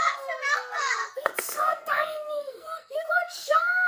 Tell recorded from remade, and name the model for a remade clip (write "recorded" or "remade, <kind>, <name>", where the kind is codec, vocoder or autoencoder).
remade, codec, SNAC